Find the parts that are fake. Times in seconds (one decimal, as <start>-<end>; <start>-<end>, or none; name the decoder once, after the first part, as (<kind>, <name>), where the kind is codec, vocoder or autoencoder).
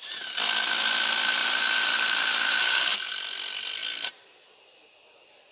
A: 1.4-3.1 (vocoder, BigVGAN v2)